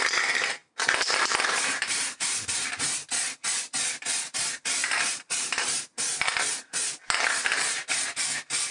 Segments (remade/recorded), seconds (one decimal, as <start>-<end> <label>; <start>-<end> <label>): 0.0-0.6 recorded; 0.6-2.5 remade; 2.5-4.8 recorded; 4.8-5.6 remade; 5.6-8.7 recorded